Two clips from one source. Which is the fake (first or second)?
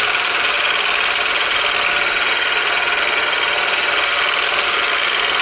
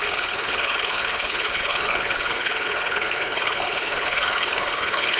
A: second